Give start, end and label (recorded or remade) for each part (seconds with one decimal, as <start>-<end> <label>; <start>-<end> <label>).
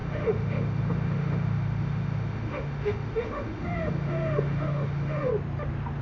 0.0-5.3 remade; 5.3-6.0 recorded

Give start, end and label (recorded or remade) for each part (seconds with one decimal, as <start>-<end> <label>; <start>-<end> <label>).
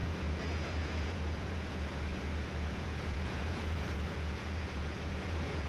0.0-5.7 remade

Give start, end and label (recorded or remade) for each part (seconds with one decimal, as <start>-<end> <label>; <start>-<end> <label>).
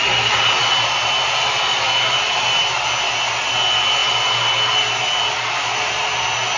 0.0-6.6 recorded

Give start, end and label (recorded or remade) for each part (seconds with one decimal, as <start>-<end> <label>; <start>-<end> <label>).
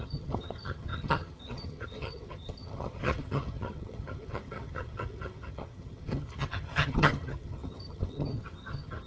0.0-9.1 remade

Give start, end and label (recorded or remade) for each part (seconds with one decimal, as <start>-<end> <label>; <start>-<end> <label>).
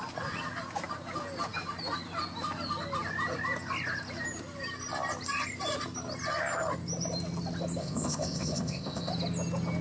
0.0-7.8 recorded; 7.8-9.1 remade; 9.1-9.8 recorded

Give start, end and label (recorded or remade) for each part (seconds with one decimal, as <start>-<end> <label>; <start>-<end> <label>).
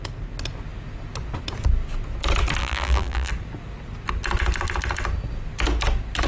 0.0-2.6 recorded; 2.6-3.3 remade; 3.3-6.3 recorded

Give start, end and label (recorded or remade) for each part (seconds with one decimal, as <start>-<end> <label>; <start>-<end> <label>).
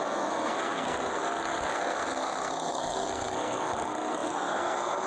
0.0-5.1 remade